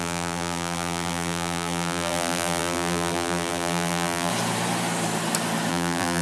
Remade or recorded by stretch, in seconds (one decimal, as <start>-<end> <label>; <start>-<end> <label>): 0.0-4.3 remade; 4.3-5.7 recorded; 5.7-6.2 remade